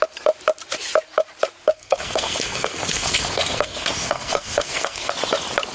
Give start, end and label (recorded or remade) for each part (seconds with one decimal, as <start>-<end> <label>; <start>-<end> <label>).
0.0-1.7 recorded; 1.7-5.1 remade; 5.1-5.7 recorded